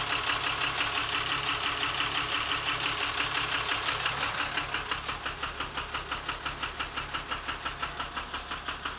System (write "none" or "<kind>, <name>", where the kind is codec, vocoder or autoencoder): none